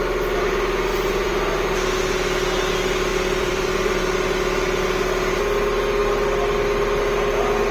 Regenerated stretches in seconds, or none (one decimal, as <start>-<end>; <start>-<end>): 0.9-1.5; 3.1-4.0; 6.0-7.0